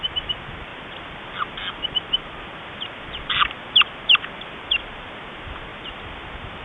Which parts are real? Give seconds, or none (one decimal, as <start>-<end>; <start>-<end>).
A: 0.0-6.6